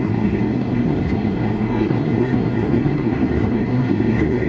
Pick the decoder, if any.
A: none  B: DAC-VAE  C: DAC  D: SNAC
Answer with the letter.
D